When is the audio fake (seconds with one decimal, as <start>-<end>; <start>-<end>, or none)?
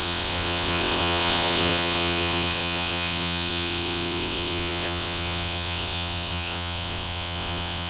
0.0-7.9